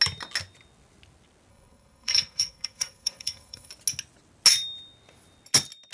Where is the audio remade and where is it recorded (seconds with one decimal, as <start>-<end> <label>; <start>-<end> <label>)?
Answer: 0.0-1.5 recorded; 1.5-3.7 remade; 3.7-5.9 recorded

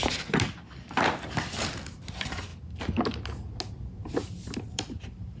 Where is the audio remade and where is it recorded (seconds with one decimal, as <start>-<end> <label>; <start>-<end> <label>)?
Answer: 0.0-2.5 remade; 2.5-4.6 recorded; 4.6-5.4 remade

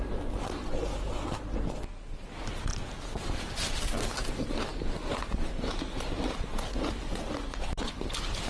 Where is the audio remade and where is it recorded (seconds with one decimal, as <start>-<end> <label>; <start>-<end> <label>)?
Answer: 0.0-8.5 recorded

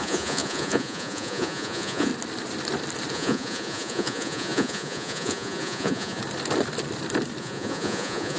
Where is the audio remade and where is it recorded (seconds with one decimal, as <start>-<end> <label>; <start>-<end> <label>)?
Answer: 0.0-2.1 remade; 2.1-3.1 recorded; 3.1-6.2 remade; 6.2-7.4 recorded; 7.4-8.4 remade